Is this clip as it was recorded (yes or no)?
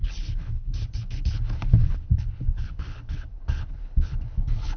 no